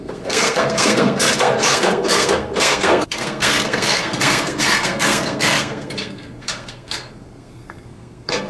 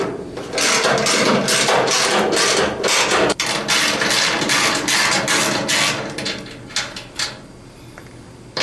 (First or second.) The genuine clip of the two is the second